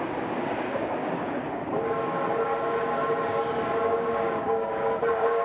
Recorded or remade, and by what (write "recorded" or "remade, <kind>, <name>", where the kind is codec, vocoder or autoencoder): remade, codec, DAC